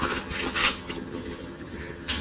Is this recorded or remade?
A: remade